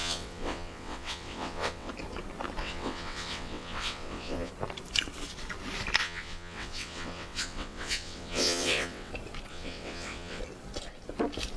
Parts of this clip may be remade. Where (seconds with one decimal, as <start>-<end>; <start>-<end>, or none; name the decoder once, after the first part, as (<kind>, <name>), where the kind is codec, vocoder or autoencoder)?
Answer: 0.0-1.9 (vocoder, WaveNeXt); 2.6-4.5; 6.0-9.1; 9.5-10.4